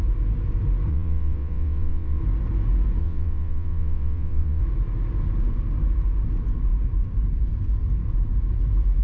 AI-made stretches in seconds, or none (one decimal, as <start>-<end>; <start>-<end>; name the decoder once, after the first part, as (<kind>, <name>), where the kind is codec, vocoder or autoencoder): 0.9-2.2 (vocoder, WaveNeXt); 3.0-4.6